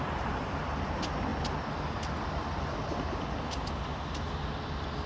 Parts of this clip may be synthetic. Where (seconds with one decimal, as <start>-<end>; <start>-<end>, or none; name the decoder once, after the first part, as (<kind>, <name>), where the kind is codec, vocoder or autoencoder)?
none